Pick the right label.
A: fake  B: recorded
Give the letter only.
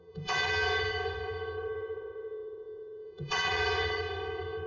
A